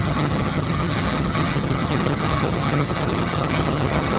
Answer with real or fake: fake